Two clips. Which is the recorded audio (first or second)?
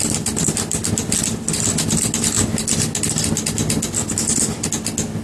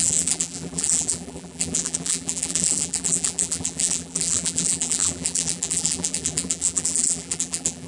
first